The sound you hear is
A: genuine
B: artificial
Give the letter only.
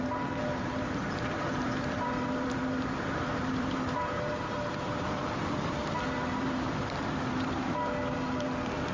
B